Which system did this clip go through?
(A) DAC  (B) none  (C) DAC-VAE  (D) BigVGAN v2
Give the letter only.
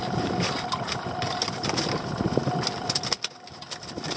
B